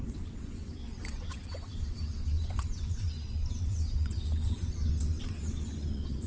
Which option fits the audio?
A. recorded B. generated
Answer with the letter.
B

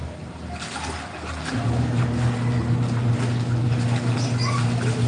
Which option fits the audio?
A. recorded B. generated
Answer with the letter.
A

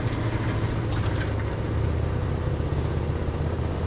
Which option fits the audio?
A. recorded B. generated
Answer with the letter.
A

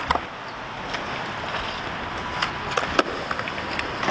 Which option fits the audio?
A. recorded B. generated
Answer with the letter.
A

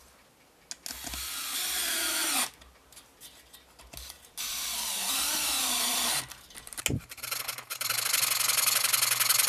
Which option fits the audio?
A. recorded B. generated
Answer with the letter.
A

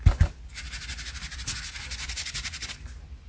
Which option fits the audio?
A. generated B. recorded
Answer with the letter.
B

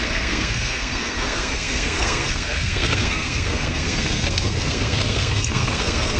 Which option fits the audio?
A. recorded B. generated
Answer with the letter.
B